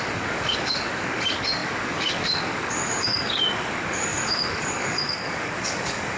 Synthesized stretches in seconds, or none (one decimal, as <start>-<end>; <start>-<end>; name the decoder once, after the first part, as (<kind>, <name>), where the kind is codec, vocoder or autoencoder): 0.0-6.2 (codec, DAC)